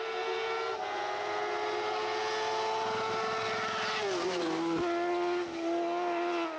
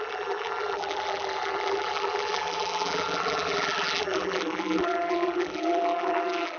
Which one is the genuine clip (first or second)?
first